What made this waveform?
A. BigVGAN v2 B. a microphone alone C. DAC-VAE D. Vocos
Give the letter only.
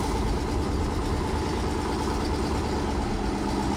B